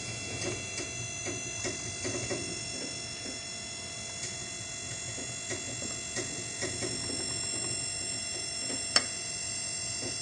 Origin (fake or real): real